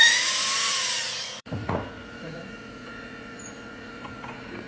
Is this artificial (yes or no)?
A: yes